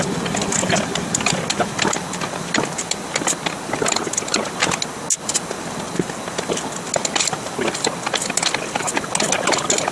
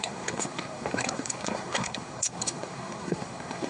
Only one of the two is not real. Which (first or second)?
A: second